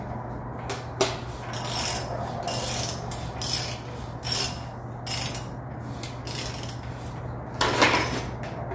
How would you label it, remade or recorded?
recorded